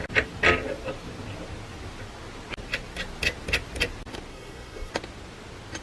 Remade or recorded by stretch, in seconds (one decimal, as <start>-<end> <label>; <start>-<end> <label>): 0.0-4.3 recorded; 4.3-4.9 remade; 4.9-5.8 recorded